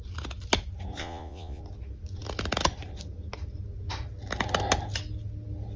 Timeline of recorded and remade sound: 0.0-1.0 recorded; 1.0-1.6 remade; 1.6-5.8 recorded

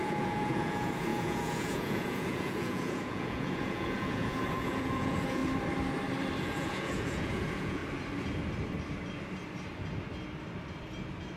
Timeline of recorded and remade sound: 0.0-5.4 remade; 5.4-6.4 recorded; 6.4-7.8 remade; 7.8-11.4 recorded

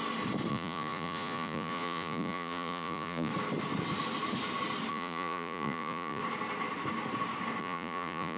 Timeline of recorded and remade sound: 0.0-0.5 recorded; 0.5-3.3 remade; 3.3-4.9 recorded; 4.9-6.2 remade; 6.2-7.6 recorded; 7.6-8.4 remade